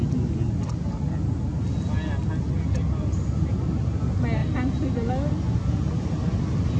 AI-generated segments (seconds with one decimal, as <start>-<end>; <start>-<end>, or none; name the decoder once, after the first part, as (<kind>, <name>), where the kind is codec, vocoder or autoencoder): none